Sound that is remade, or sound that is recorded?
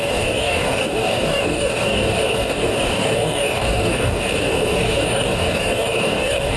remade